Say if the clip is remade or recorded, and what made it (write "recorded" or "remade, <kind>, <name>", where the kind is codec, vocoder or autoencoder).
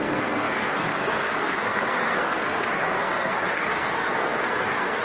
remade, codec, SNAC